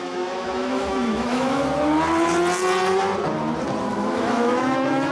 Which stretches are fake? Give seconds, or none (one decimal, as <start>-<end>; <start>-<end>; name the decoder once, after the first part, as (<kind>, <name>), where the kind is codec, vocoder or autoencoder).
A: 0.0-1.6 (autoencoder, DAC-VAE); 3.9-5.1